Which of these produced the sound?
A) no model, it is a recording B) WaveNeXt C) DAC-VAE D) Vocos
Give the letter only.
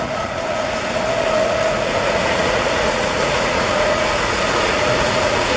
D